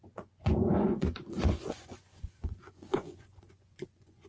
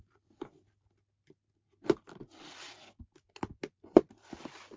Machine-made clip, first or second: first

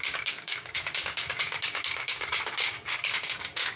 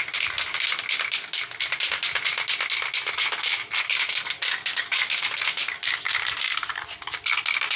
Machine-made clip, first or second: first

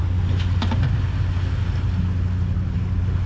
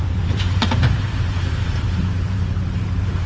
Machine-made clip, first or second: second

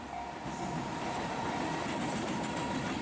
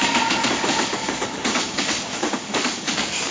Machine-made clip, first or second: second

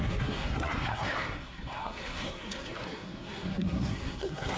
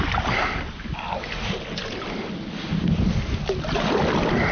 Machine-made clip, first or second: first